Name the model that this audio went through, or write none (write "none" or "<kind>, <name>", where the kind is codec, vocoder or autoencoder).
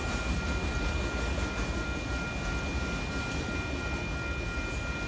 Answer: none